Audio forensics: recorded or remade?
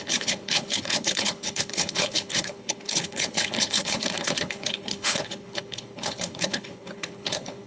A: remade